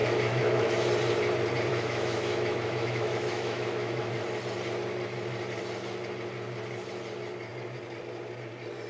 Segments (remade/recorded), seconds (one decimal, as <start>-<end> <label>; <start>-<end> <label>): 0.0-0.9 remade; 0.9-1.7 recorded; 1.7-4.1 remade; 4.1-8.9 recorded